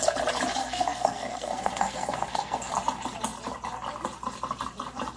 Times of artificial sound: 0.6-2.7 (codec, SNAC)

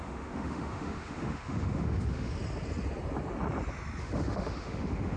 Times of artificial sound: 0.0-2.3 (autoencoder, DAC-VAE); 4.0-5.2

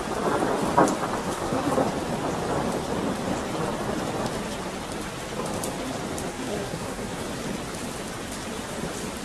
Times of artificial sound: 1.2-1.7 (codec, SNAC); 6.3-7.2

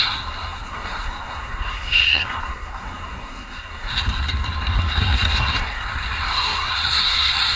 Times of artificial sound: 0.0-7.6 (codec, SNAC)

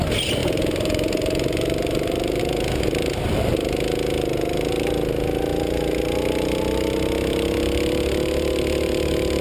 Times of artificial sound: 0.4-2.4 (vocoder, BigVGAN v2)